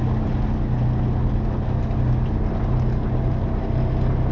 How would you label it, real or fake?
real